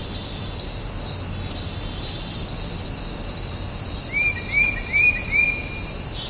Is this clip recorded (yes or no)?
yes